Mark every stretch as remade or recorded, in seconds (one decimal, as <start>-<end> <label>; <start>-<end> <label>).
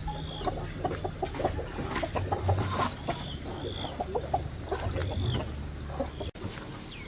0.0-7.1 recorded